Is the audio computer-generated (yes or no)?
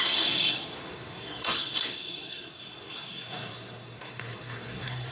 yes